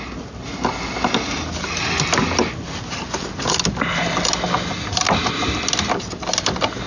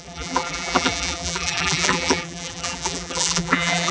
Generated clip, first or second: second